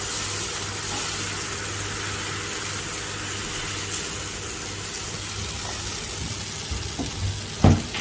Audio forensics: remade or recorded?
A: recorded